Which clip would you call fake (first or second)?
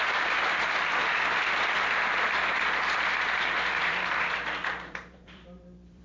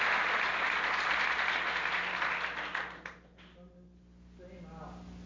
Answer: first